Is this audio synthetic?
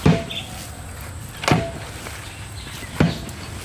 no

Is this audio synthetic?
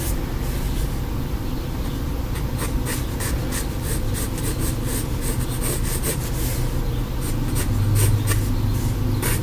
no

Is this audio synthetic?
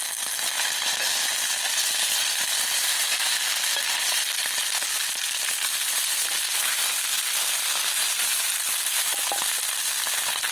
no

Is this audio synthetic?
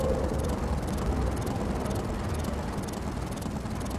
no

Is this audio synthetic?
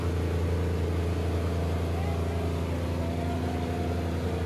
no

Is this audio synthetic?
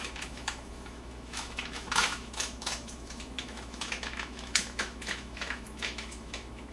yes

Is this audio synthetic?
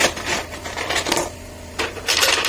no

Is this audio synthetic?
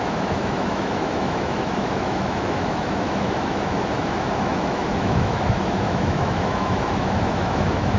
yes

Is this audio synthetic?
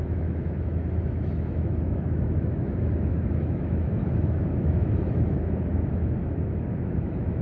yes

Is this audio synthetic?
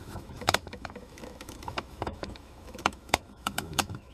yes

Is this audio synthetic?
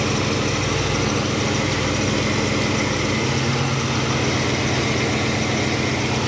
no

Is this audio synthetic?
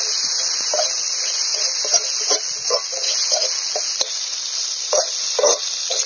no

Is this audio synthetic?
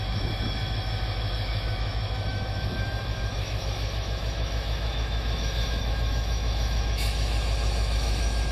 yes